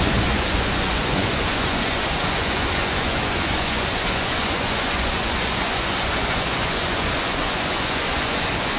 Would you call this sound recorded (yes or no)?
no